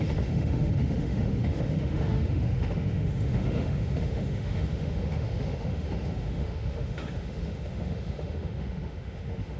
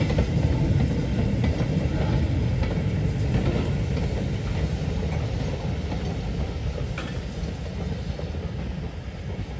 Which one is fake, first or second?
first